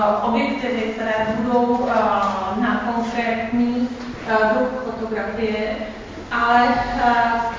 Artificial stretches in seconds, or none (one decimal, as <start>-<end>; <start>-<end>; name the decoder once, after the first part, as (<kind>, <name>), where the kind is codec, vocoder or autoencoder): none